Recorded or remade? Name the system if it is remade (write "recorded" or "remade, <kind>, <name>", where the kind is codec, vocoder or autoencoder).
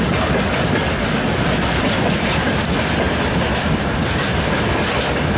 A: recorded